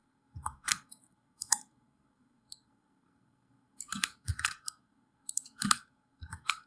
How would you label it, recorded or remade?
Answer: remade